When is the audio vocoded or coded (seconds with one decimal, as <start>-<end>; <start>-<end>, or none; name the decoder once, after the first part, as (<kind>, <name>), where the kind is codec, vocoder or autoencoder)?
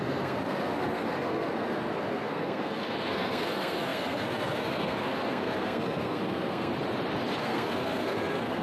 0.0-6.7 (codec, SNAC); 7.4-8.6